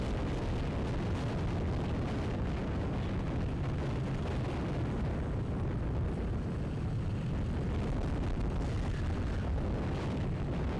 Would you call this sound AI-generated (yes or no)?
no